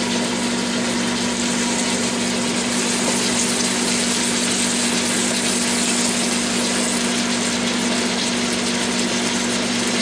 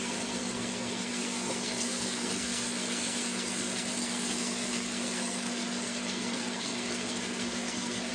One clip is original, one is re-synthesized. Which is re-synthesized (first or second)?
second